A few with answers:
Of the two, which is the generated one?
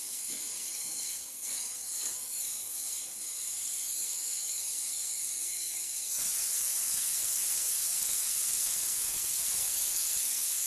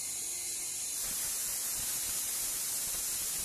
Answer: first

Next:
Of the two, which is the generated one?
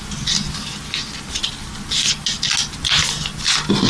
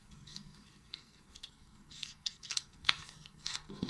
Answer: second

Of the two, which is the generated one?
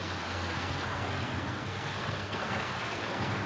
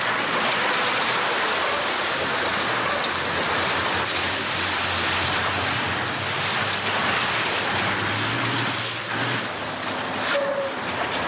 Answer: first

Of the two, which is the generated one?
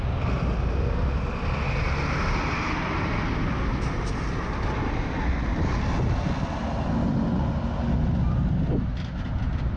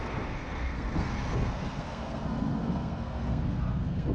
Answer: second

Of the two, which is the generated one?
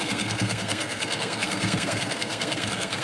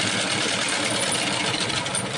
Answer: first